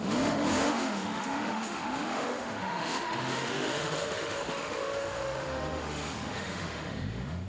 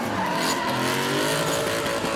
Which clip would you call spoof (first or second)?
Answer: first